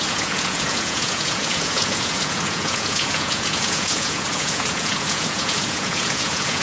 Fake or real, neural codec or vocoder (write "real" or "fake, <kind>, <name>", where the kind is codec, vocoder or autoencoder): fake, vocoder, Vocos